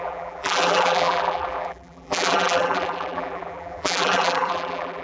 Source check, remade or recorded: remade